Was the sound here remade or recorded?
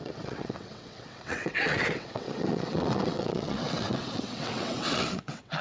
remade